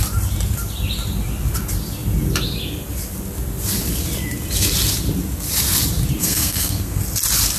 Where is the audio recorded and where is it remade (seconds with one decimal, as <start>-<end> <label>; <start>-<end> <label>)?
0.0-6.2 recorded; 6.2-7.0 remade; 7.0-7.6 recorded